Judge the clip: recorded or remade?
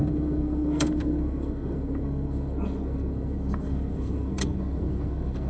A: remade